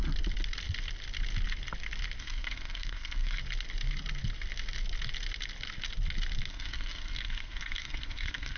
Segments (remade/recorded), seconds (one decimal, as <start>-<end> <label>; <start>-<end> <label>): 0.0-2.2 recorded; 2.2-3.4 remade; 3.4-6.5 recorded; 6.5-8.6 remade